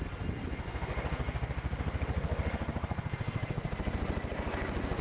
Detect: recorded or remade recorded